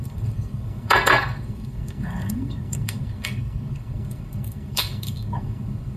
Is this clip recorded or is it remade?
remade